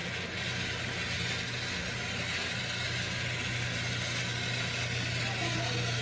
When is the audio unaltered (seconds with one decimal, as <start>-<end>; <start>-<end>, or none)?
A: 0.0-6.0